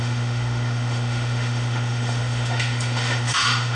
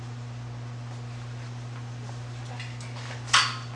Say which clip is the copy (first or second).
first